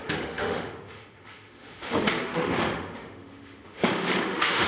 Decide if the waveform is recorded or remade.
remade